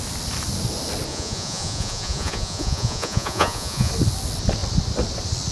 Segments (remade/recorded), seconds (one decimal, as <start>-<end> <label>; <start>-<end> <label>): 0.0-1.1 recorded; 1.1-3.9 remade; 3.9-5.5 recorded